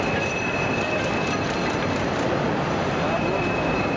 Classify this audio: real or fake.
real